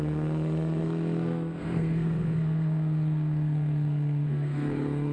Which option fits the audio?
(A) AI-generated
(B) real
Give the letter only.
A